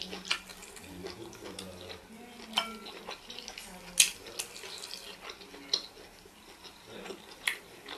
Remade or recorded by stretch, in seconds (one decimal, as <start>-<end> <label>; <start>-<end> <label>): 0.0-8.0 recorded